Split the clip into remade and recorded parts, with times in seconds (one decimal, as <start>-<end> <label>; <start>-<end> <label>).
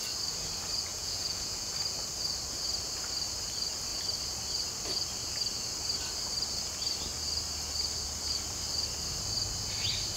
0.0-0.9 recorded; 0.9-1.7 remade; 1.7-10.2 recorded